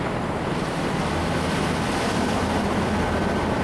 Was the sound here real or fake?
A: real